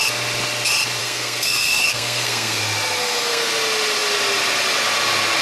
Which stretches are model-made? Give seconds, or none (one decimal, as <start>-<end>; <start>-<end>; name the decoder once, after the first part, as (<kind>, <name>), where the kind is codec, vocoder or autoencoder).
1.0-2.6 (codec, SNAC); 3.0-3.5